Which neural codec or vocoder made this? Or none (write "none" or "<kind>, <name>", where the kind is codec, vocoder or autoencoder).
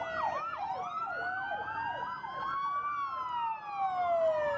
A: none